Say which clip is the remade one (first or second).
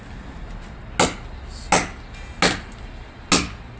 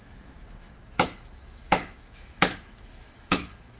second